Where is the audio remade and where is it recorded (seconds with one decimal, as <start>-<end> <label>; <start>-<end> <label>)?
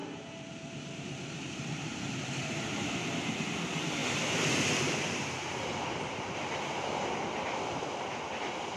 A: 0.0-2.6 remade; 2.6-4.0 recorded; 4.0-7.0 remade; 7.0-8.8 recorded